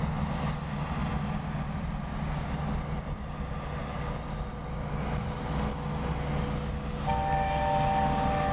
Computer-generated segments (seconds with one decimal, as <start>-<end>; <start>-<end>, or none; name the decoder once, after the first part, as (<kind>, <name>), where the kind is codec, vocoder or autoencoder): none